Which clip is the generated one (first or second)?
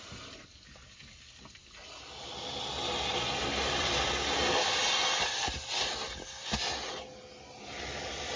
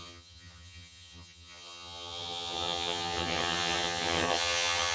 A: second